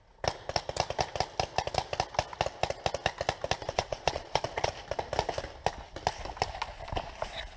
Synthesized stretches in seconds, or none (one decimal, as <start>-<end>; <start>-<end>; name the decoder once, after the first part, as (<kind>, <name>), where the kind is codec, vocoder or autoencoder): 3.6-4.7 (vocoder, Vocos)